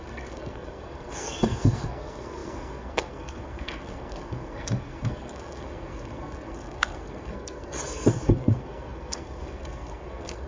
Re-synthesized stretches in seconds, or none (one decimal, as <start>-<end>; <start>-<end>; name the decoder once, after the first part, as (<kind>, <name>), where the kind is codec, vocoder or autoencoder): 0.0-10.5 (codec, SNAC)